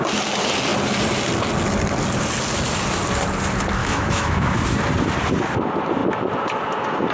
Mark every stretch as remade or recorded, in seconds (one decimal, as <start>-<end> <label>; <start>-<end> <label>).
0.0-3.8 recorded; 3.8-4.6 remade; 4.6-7.1 recorded